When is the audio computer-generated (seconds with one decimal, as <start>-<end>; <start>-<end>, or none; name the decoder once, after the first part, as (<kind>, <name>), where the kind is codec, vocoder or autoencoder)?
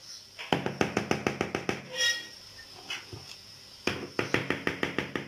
none